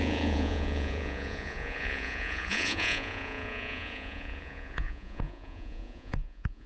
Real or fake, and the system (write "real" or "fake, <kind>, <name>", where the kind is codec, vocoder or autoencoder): fake, vocoder, Vocos